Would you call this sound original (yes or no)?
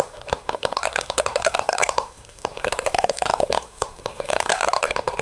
no